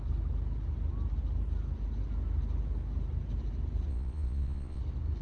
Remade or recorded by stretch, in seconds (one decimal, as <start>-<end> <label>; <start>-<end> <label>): 0.0-3.9 recorded; 3.9-4.8 remade; 4.8-5.2 recorded